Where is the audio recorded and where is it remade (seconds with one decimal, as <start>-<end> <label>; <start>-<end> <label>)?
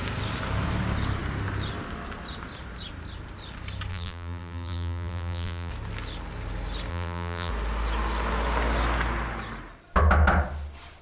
0.0-3.9 recorded; 3.9-5.7 remade; 5.7-6.9 recorded; 6.9-7.5 remade; 7.5-11.0 recorded